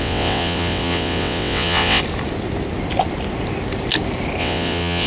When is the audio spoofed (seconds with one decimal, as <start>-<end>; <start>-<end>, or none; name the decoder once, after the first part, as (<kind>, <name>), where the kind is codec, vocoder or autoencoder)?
0.0-2.0 (vocoder, WaveNeXt); 4.4-5.1